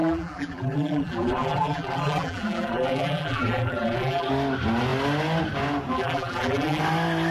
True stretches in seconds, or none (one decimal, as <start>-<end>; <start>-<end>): 4.3-5.9; 6.8-7.3